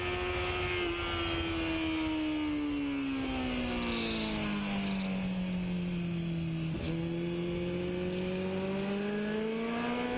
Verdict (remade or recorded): recorded